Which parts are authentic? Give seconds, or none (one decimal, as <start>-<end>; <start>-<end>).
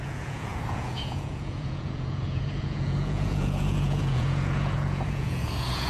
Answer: none